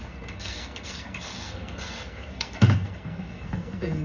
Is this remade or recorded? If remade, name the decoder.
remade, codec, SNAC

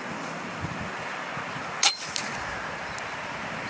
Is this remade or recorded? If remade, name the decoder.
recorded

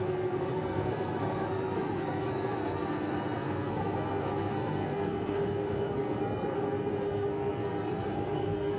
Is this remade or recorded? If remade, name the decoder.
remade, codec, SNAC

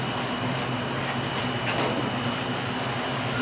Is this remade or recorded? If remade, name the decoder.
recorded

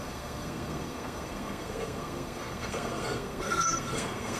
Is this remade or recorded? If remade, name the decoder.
remade, codec, SNAC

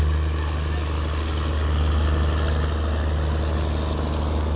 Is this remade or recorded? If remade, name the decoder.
recorded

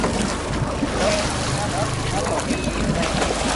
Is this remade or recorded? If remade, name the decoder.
recorded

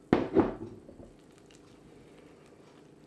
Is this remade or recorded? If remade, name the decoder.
recorded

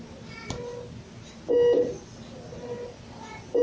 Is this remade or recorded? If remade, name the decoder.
recorded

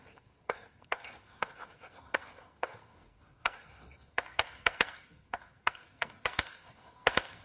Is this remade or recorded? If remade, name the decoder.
remade, codec, SNAC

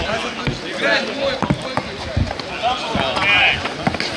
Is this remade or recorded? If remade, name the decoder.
recorded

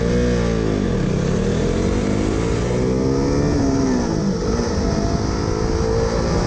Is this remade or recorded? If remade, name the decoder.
recorded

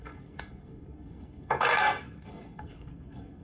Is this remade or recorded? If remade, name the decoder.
remade, codec, SNAC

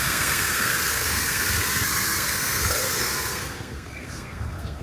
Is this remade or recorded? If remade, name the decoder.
remade, codec, SNAC